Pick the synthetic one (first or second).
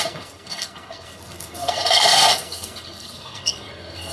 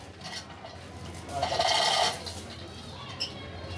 first